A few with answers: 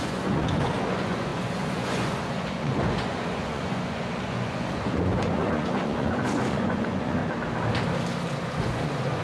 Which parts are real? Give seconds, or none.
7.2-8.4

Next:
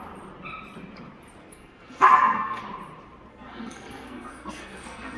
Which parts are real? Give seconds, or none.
0.0-1.4; 2.6-3.3

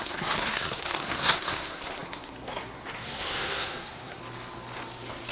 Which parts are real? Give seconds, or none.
4.2-5.3

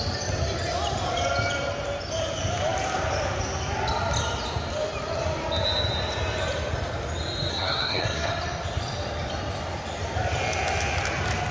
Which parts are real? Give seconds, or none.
0.0-7.5; 8.3-11.5

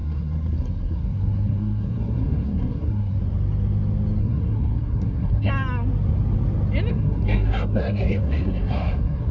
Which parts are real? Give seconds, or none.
3.2-4.2; 5.5-6.9

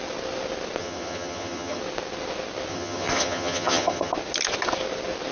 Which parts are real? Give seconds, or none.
0.0-0.8; 1.8-2.7; 4.1-5.3